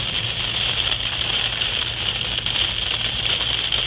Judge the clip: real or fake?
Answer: real